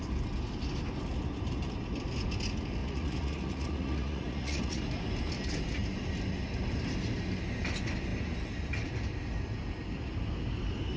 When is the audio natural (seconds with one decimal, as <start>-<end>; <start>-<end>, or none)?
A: 0.0-2.8; 4.8-11.0